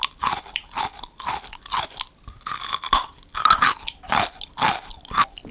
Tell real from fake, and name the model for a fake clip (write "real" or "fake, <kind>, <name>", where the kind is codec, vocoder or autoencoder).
real